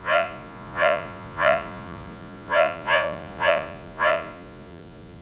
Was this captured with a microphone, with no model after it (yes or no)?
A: no